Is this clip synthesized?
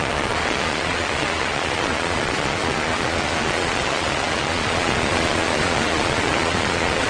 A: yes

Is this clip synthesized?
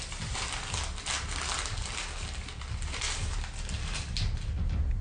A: no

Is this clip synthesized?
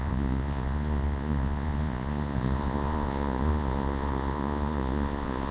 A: yes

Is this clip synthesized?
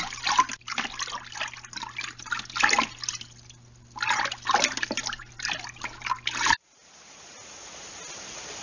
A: no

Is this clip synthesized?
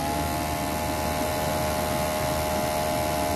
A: no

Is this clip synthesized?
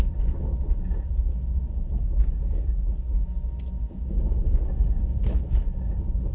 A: no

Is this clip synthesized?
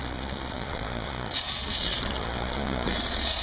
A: yes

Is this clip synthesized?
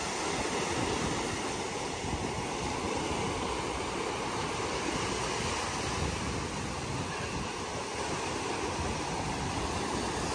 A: no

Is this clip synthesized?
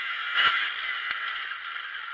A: no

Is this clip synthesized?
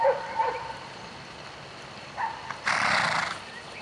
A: no